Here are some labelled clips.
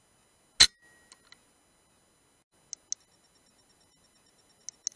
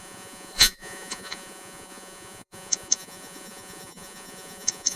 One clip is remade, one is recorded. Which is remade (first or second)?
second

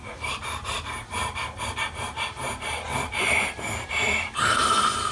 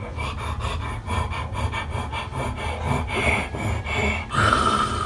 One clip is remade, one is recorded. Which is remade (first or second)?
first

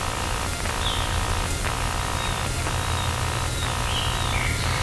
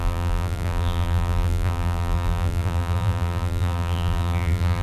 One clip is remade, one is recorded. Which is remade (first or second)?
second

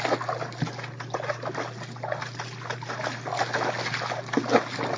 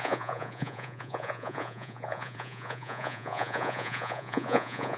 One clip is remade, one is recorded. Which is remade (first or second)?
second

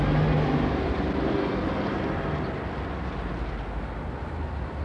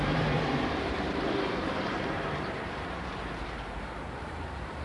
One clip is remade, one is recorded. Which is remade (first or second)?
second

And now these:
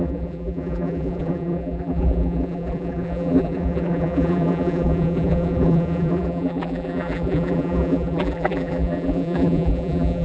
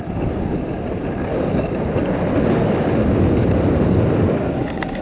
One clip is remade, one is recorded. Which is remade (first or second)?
first